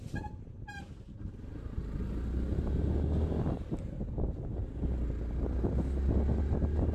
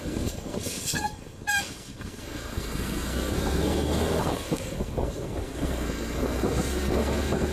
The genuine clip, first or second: first